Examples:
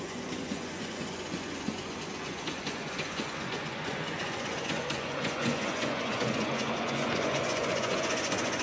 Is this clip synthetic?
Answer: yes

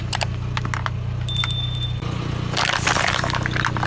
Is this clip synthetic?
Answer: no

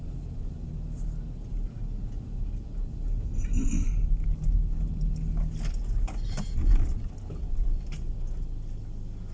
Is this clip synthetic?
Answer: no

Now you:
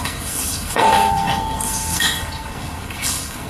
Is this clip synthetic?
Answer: yes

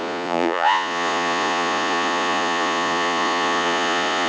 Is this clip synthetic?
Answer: yes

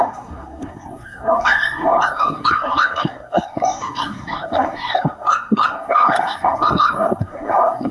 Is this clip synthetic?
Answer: yes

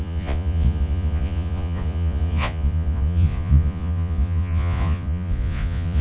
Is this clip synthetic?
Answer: yes